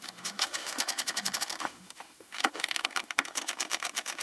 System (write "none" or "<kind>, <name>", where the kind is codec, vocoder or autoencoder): autoencoder, DAC-VAE